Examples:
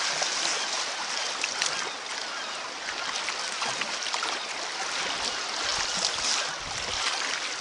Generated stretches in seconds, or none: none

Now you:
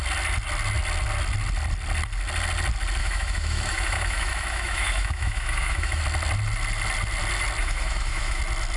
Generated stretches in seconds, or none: 3.0-6.0 (autoencoder, DAC-VAE); 7.6-8.4

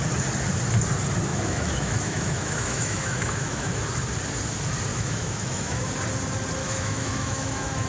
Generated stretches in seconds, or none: 1.3-3.8 (autoencoder, DAC-VAE); 4.9-5.9; 6.6-7.9

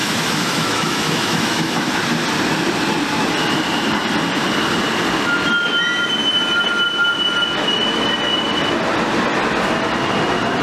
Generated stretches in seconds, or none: 0.0-1.9 (autoencoder, DAC-VAE)

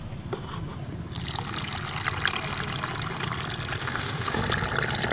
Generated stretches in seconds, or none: 3.8-4.4 (autoencoder, DAC-VAE)

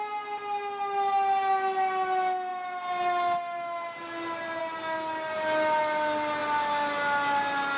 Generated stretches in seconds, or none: none

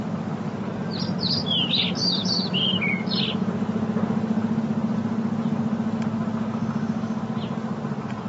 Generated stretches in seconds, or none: 6.6-7.2 (autoencoder, DAC-VAE)

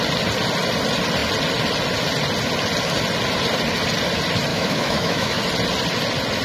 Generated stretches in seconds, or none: 4.5-5.4 (autoencoder, DAC-VAE)